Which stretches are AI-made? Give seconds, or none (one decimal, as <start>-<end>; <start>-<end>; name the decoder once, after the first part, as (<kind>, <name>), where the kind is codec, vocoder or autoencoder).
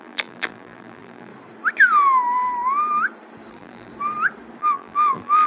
0.0-1.3 (vocoder, BigVGAN v2); 3.5-3.9; 4.6-5.5